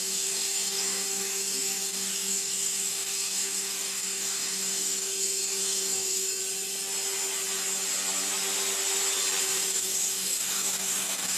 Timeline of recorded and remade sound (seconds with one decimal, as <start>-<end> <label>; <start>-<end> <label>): 0.0-6.4 remade; 6.4-9.4 recorded; 9.4-11.4 remade